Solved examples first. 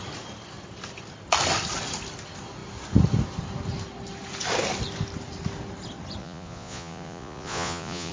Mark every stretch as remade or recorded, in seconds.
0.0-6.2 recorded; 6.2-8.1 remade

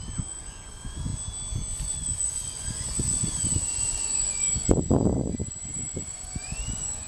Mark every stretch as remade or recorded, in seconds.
0.0-1.1 remade; 1.1-1.8 recorded; 1.8-7.1 remade

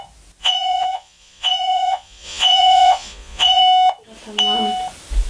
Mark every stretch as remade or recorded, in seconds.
0.0-0.4 recorded; 0.4-3.6 remade; 3.6-5.3 recorded

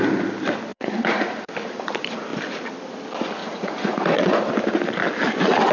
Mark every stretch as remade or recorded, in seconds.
0.0-0.7 recorded; 0.7-1.5 remade; 1.5-3.4 recorded; 3.4-4.5 remade; 4.5-5.7 recorded

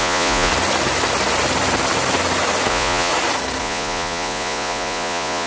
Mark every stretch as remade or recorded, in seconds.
0.0-0.5 remade; 0.5-2.7 recorded; 2.7-3.1 remade; 3.1-3.6 recorded; 3.6-5.5 remade